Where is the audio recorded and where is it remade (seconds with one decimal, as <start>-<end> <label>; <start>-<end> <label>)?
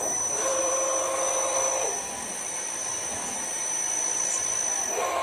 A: 0.0-5.2 remade